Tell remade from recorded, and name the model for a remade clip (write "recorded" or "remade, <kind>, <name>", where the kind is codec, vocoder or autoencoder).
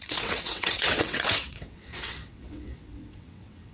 remade, vocoder, WaveNeXt